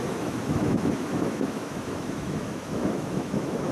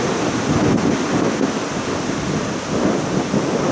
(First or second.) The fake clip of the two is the first